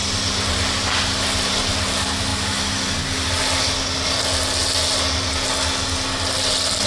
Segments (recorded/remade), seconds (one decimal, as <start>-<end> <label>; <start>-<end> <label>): 0.0-2.3 remade; 2.3-5.8 recorded; 5.8-6.9 remade